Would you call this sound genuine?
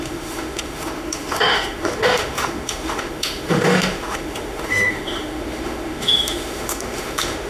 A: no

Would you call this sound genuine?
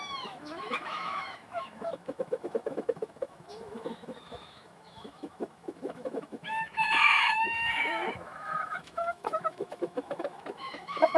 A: no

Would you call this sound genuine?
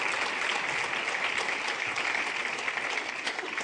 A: yes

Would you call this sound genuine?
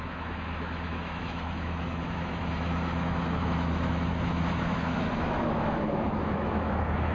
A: no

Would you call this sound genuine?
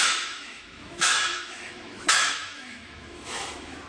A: no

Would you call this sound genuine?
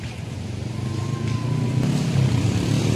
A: yes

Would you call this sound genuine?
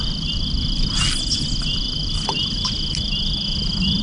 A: yes